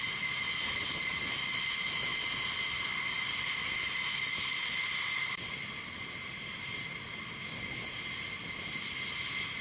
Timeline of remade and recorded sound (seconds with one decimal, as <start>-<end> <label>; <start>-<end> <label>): 0.0-9.6 recorded